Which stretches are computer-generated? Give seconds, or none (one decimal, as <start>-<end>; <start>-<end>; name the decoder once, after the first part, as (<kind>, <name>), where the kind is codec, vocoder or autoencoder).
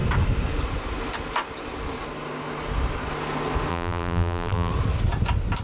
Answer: 3.7-4.7 (vocoder, BigVGAN v2)